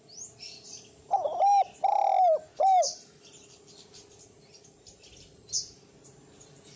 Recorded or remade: recorded